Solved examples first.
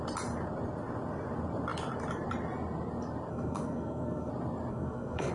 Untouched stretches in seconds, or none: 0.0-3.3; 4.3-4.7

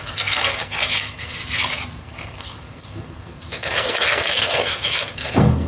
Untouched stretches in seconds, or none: 1.4-2.0

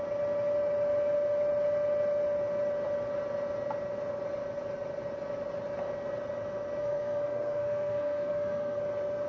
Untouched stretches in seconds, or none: 0.0-6.8; 8.8-9.3

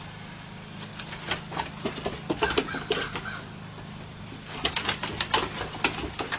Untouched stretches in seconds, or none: 0.0-6.4

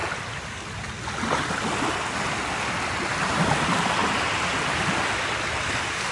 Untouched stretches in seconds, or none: 0.0-6.1

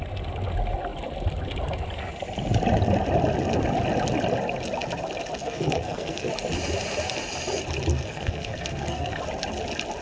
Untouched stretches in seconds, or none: 0.0-5.4; 6.3-7.9; 9.2-10.0

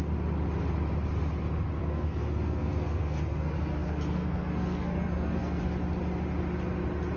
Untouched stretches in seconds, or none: 0.0-1.8; 5.6-7.2

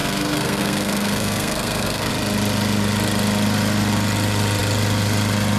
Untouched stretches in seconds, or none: 2.1-5.6